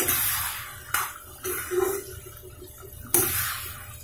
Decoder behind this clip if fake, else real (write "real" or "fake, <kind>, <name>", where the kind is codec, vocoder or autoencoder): real